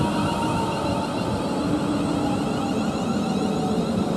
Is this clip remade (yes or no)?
no